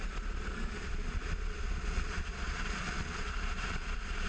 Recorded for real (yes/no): no